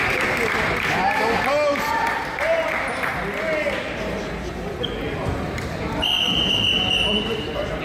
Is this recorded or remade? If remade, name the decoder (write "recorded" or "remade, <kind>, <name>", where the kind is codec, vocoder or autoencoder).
recorded